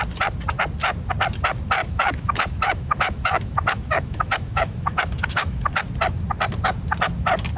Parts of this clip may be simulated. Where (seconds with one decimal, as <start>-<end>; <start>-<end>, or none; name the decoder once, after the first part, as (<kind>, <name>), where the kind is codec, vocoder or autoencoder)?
1.8-5.7 (autoencoder, DAC-VAE)